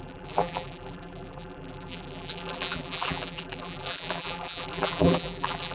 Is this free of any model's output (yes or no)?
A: no